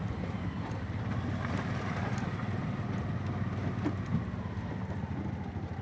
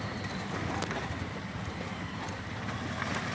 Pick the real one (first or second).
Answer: second